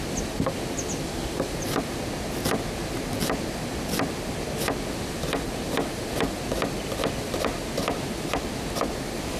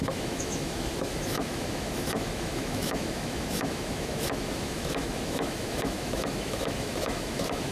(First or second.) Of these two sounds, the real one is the first